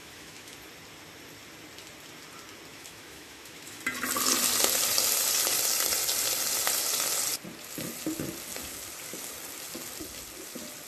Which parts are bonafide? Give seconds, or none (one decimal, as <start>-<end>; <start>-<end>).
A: 0.5-2.7; 3.8-10.9